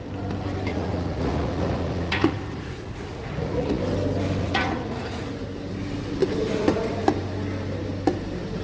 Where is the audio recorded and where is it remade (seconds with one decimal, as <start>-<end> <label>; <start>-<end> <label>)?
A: 0.0-0.7 recorded; 0.7-3.8 remade; 3.8-4.4 recorded; 4.4-5.3 remade; 5.3-8.6 recorded

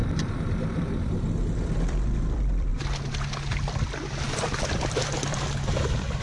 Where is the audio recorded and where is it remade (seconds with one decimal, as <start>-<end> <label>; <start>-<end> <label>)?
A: 0.0-2.7 remade; 2.7-3.7 recorded; 3.7-6.2 remade

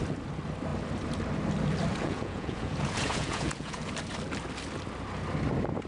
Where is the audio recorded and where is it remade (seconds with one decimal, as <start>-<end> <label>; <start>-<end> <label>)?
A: 0.0-1.9 recorded; 1.9-3.9 remade; 3.9-5.9 recorded

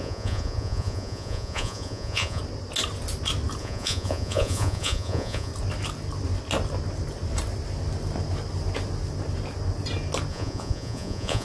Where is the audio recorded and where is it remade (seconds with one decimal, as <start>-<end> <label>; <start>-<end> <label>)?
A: 0.0-2.4 remade; 2.4-3.6 recorded; 3.6-5.5 remade; 5.5-10.3 recorded; 10.3-11.4 remade

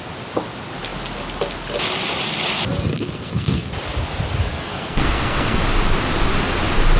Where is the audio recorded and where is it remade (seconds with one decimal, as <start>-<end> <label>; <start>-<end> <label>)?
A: 0.0-2.9 recorded; 2.9-3.7 remade; 3.7-4.5 recorded; 4.5-5.6 remade; 5.6-7.0 recorded